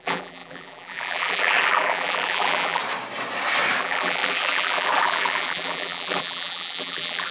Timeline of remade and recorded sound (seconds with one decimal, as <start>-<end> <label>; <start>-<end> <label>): 0.0-2.8 remade; 2.8-3.8 recorded; 3.8-7.3 remade